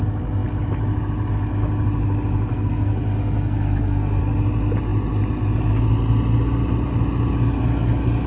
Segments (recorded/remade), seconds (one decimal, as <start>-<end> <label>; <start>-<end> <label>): 0.0-2.5 recorded; 2.5-4.2 remade; 4.2-8.3 recorded